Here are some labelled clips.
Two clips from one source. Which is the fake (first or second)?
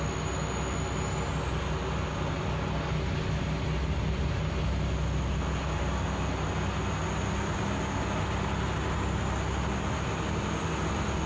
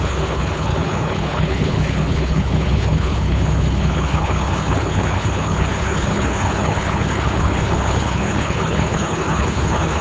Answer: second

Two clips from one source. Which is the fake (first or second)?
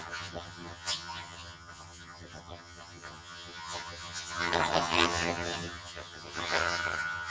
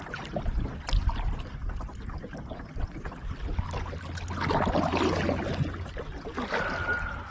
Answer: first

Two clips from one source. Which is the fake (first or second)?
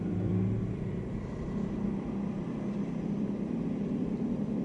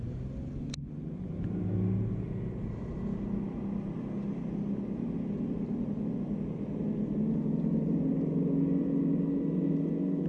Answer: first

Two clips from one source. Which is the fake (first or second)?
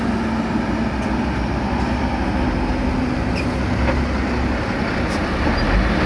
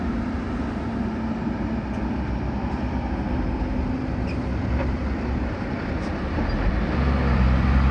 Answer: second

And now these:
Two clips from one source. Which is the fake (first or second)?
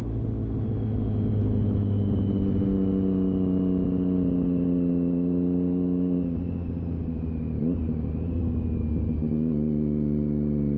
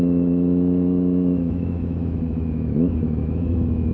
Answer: second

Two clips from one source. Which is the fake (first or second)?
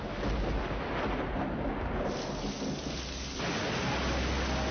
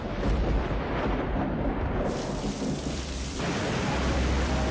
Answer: second